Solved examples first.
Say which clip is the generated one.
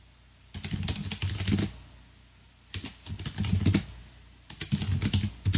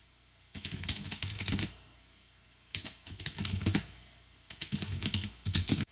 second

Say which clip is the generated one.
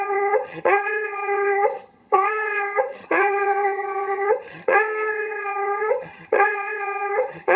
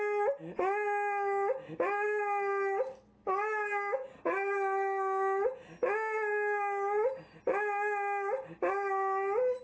first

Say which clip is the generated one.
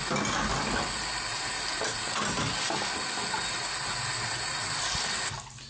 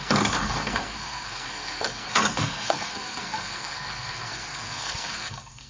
second